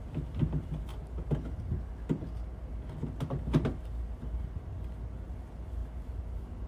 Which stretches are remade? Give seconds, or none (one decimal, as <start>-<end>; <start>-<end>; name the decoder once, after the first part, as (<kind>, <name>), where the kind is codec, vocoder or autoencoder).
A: none